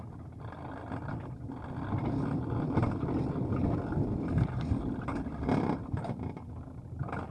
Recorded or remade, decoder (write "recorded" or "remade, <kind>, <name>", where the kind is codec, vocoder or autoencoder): recorded